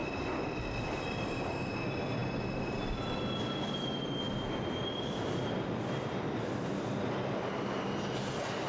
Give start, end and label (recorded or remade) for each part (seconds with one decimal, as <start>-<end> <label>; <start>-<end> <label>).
0.0-8.7 recorded